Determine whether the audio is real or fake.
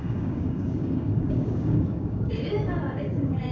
fake